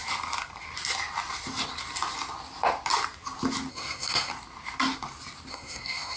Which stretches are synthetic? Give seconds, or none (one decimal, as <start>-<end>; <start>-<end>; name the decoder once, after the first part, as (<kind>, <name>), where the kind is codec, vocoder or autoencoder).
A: 3.7-4.3 (codec, SNAC); 5.5-6.2